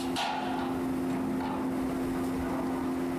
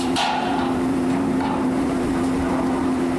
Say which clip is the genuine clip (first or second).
first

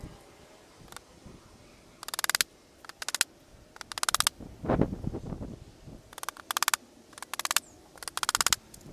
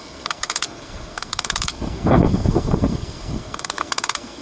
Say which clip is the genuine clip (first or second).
first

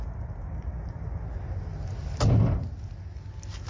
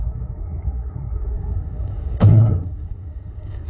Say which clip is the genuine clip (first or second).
first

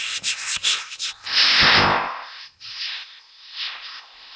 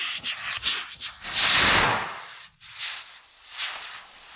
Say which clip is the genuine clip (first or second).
second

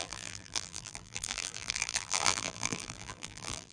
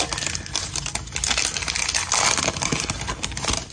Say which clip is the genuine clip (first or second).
second